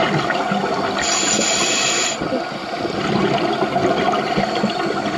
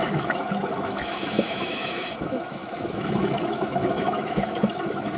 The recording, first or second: first